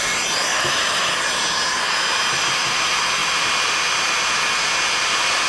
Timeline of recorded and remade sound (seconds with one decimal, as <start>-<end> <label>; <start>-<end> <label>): 0.0-0.5 recorded; 0.5-1.1 remade; 1.1-5.5 recorded